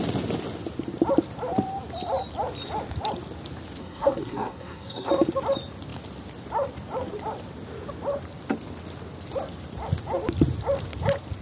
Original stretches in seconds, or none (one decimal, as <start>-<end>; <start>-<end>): 0.0-3.8; 5.1-11.4